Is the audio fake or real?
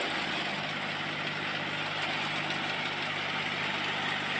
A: real